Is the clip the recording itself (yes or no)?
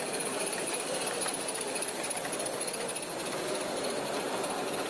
yes